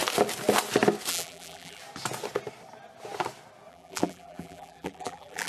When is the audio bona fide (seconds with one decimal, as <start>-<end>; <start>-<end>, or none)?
0.0-1.1; 1.8-3.7